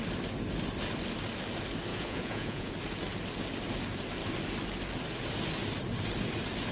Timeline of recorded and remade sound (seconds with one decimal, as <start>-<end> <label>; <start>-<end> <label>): 0.0-1.9 recorded; 1.9-2.7 remade; 2.7-6.7 recorded